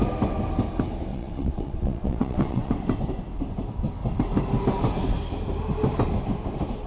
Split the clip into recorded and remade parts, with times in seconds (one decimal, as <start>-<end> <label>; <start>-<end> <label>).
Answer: 0.0-1.1 recorded; 1.1-2.7 remade; 2.7-6.9 recorded